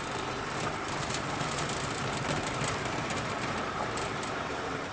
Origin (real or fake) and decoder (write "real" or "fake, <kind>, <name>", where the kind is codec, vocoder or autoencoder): fake, vocoder, BigVGAN v2